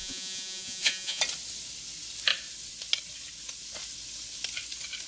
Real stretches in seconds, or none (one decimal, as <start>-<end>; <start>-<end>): 1.2-5.1